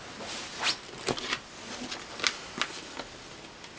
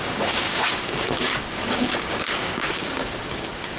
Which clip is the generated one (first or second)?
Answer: second